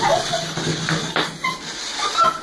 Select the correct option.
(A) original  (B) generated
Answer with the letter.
A